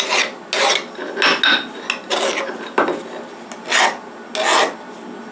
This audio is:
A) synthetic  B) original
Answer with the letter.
B